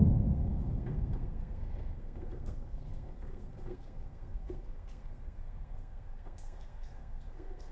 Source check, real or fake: fake